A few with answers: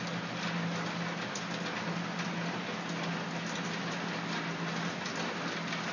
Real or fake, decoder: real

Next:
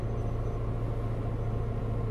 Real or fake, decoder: real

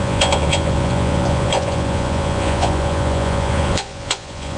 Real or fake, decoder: fake, vocoder, Vocos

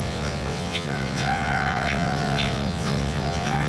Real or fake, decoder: fake, vocoder, WaveNeXt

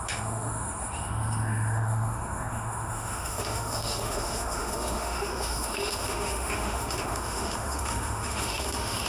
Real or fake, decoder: fake, autoencoder, DAC-VAE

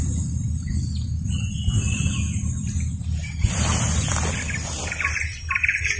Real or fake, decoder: real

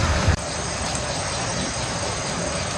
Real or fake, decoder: fake, vocoder, BigVGAN v2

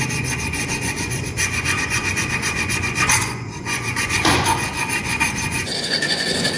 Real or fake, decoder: fake, vocoder, Vocos